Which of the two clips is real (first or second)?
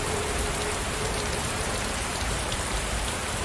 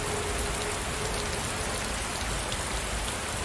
second